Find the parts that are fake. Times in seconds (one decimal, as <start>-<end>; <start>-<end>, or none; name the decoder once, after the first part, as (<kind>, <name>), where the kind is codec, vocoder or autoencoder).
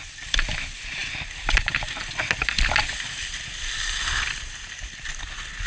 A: none